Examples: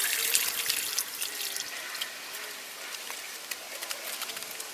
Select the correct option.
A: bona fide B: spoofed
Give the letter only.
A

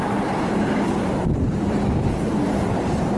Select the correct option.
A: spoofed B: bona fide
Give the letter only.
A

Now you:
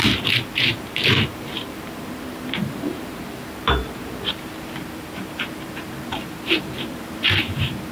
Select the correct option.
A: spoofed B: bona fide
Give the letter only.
A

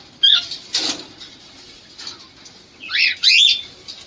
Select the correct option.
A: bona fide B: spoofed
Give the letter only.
A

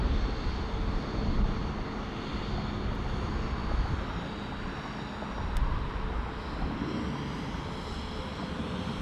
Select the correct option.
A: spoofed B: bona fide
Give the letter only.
B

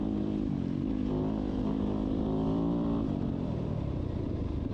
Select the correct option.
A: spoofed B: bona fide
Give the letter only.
A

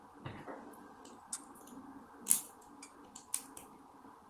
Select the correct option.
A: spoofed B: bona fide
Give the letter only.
B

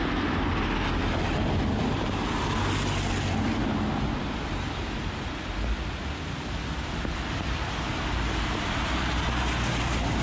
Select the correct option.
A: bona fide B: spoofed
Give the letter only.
A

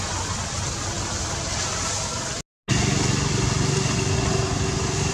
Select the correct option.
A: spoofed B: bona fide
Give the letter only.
B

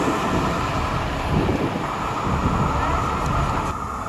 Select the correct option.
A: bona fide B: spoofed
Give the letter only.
A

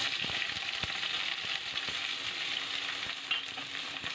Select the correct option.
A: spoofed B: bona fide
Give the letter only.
A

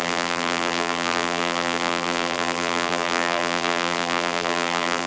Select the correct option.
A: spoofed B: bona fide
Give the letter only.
A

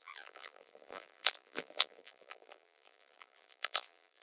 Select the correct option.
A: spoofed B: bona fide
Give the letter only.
A